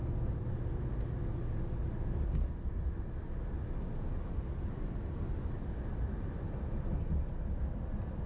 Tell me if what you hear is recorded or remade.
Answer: recorded